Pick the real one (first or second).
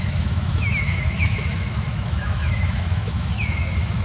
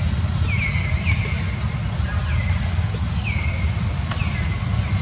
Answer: second